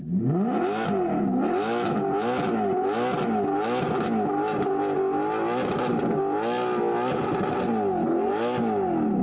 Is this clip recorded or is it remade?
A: recorded